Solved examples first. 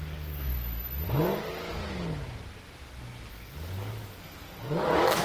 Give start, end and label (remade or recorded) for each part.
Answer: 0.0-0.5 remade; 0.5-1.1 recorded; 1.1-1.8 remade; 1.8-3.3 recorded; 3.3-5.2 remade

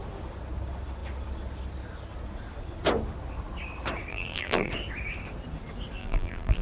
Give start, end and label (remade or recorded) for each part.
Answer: 0.0-4.1 recorded; 4.1-4.7 remade; 4.7-6.0 recorded; 6.0-6.6 remade

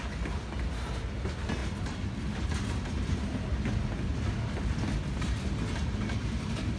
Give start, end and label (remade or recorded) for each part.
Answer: 0.0-6.8 recorded

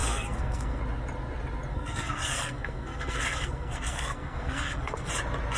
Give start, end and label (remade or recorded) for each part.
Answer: 0.0-0.8 remade; 0.8-1.7 recorded; 1.7-5.1 remade; 5.1-5.6 recorded

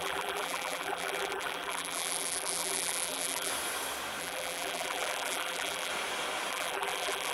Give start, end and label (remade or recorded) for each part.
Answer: 0.0-3.5 remade; 3.5-4.2 recorded; 4.2-5.9 remade; 5.9-6.5 recorded; 6.5-7.3 remade

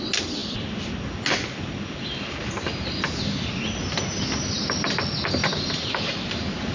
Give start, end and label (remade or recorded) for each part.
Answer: 0.0-6.7 recorded